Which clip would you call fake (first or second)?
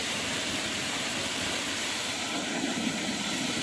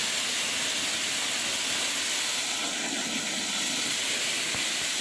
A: first